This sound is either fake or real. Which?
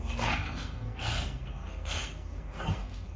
fake